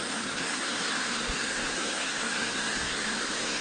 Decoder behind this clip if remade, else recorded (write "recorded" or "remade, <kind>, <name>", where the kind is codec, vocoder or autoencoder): remade, codec, SNAC